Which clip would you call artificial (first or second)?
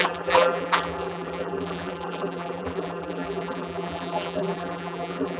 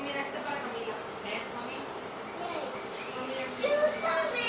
first